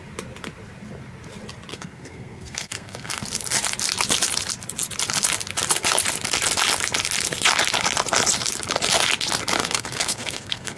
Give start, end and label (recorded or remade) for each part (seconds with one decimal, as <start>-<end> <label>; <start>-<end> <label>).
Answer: 0.0-1.7 recorded; 1.7-3.2 remade; 3.2-9.6 recorded; 9.6-10.8 remade